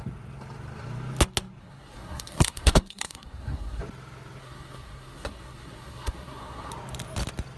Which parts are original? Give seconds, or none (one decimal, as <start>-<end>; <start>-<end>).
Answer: 0.0-1.6; 3.8-4.4; 6.7-7.6